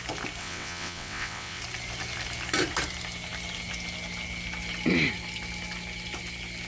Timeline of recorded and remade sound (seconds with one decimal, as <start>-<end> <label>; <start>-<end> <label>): 0.0-0.4 recorded; 0.4-1.6 remade; 1.6-6.7 recorded